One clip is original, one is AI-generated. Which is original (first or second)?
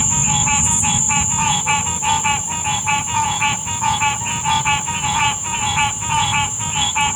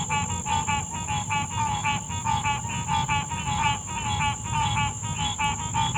second